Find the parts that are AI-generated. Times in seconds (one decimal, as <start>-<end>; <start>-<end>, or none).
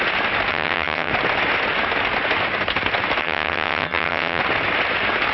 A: 0.5-1.1; 3.2-4.4